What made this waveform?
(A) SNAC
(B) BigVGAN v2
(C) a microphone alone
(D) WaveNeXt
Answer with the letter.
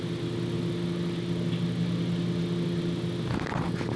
C